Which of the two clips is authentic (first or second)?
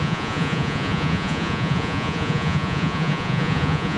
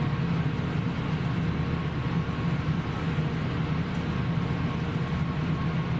second